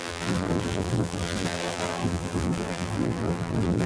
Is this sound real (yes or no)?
no